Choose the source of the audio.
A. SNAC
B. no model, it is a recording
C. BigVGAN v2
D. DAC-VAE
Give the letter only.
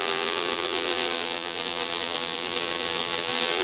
C